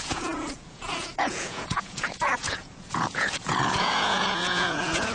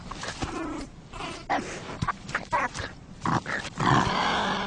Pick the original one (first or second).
second